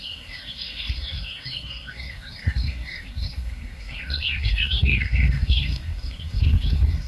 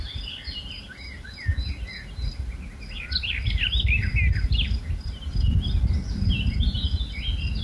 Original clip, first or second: second